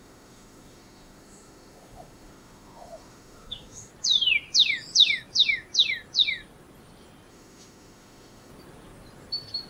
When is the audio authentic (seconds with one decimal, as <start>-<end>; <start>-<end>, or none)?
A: 3.9-7.3; 8.5-9.7